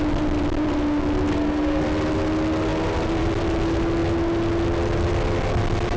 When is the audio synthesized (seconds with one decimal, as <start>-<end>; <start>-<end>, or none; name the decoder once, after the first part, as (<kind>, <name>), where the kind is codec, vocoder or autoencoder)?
1.3-1.8 (codec, SNAC)